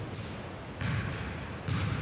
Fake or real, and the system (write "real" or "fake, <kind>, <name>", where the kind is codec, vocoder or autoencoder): real